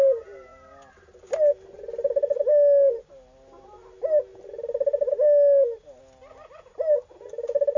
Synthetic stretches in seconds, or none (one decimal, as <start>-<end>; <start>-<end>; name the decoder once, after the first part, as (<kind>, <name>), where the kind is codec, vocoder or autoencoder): none